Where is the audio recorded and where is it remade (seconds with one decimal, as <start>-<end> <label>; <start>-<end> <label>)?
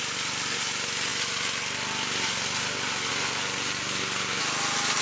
0.0-5.0 recorded